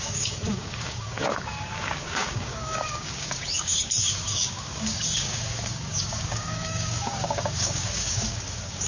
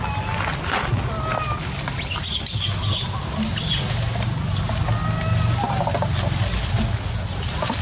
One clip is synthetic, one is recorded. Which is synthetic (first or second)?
first